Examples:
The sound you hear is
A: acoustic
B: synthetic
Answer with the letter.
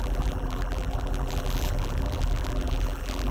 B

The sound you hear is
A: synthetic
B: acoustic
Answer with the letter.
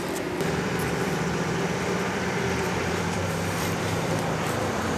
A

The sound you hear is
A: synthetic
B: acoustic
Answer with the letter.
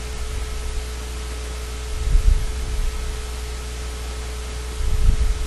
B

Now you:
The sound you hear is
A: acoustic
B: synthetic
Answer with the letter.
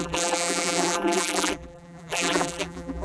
B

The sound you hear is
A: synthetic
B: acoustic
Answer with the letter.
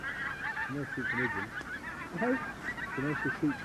B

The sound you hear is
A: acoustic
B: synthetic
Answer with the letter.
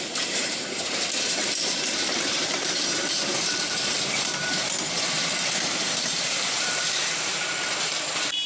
B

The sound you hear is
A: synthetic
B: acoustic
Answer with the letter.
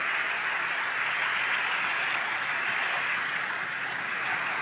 B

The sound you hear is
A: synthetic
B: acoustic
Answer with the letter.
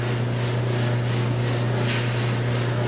B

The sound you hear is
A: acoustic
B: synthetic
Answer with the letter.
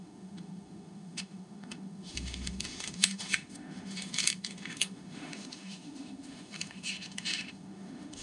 B